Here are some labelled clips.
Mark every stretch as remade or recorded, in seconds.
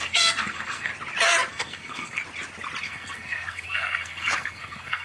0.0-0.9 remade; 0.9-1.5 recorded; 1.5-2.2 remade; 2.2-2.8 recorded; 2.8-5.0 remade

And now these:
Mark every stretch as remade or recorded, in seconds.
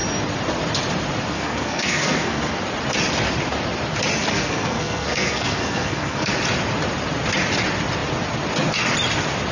0.0-1.3 recorded; 1.3-2.6 remade; 2.6-4.3 recorded; 4.3-6.3 remade; 6.3-9.5 recorded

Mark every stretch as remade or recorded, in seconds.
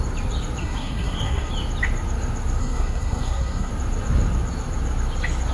0.0-0.6 recorded; 0.6-1.5 remade; 1.5-2.6 recorded; 2.6-3.7 remade; 3.7-5.5 recorded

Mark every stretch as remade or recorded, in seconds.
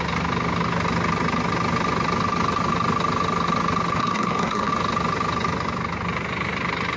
0.0-4.0 recorded; 4.0-4.7 remade; 4.7-7.0 recorded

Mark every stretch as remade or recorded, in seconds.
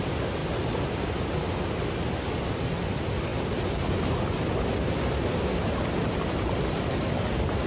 0.0-7.7 recorded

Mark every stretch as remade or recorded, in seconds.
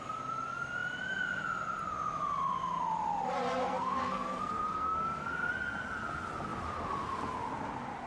0.0-3.6 recorded; 3.6-5.5 remade; 5.5-8.1 recorded